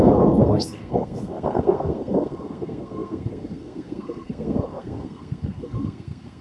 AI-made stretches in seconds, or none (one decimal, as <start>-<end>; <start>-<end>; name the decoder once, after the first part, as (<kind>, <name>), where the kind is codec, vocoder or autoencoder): 0.0-6.4 (codec, SNAC)